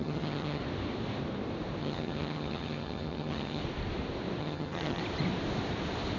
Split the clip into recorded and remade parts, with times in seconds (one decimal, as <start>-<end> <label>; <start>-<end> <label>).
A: 0.0-0.6 remade; 0.6-1.8 recorded; 1.8-3.6 remade; 3.6-4.4 recorded; 4.4-5.0 remade; 5.0-6.2 recorded